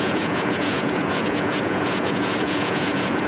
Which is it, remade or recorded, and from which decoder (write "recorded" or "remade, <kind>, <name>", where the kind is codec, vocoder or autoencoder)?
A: remade, vocoder, Vocos